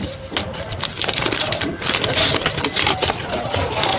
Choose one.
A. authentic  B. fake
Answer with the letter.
A